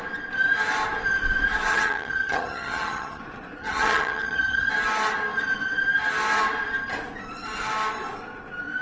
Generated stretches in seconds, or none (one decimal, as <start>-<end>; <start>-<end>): 1.7-3.2; 3.6-4.7